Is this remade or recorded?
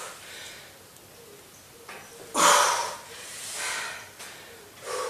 recorded